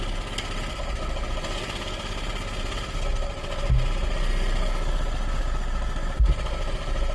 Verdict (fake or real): real